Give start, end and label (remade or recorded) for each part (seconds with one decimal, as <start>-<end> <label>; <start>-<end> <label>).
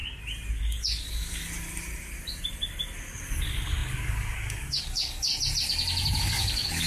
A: 0.0-0.6 recorded; 0.6-1.4 remade; 1.4-3.4 recorded; 3.4-5.3 remade; 5.3-6.2 recorded; 6.2-6.9 remade